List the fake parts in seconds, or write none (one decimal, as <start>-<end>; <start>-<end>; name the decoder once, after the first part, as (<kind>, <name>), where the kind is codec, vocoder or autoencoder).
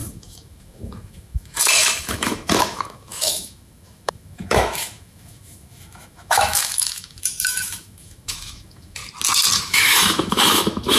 0.0-9.0 (autoencoder, DAC-VAE); 9.6-11.0